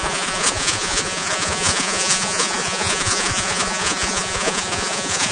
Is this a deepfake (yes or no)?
yes